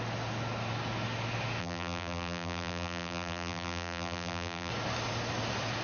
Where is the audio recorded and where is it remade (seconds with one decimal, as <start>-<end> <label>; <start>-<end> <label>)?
0.0-1.6 recorded; 1.6-4.7 remade; 4.7-5.8 recorded